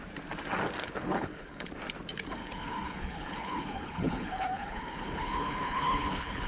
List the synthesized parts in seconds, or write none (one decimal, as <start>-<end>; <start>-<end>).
0.8-1.7; 2.4-6.5

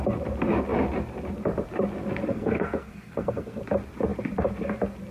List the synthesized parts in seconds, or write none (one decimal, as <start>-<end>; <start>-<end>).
2.3-3.6

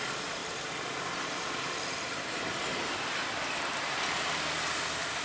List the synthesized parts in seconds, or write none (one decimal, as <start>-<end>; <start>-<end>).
0.4-3.5

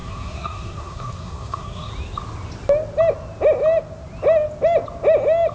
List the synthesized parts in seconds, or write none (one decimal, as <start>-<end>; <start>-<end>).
0.0-1.9

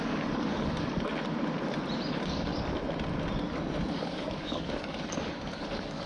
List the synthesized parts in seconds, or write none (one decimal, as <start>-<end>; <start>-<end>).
0.0-1.1; 2.1-2.5; 3.9-6.1

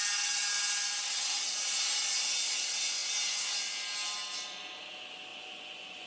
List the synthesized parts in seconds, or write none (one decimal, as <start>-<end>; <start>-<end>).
5.3-6.1

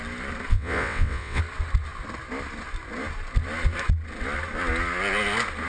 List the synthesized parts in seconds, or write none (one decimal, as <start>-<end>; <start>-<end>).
0.5-1.4